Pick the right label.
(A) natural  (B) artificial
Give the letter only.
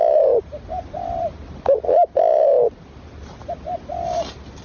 A